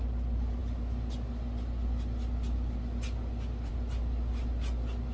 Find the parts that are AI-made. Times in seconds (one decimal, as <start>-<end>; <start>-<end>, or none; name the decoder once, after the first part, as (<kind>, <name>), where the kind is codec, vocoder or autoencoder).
none